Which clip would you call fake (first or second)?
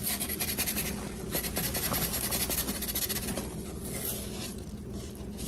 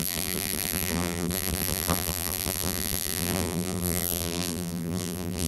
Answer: second